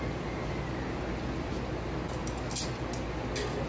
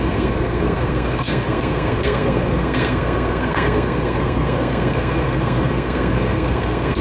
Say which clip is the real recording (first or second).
first